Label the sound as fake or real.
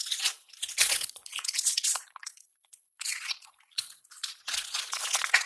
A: fake